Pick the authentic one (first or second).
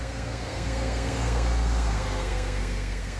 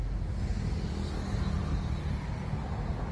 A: second